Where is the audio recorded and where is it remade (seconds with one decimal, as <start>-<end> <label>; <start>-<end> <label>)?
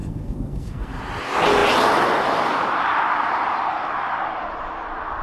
0.0-1.0 remade; 1.0-5.2 recorded